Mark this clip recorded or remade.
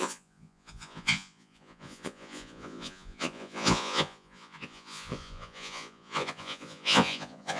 remade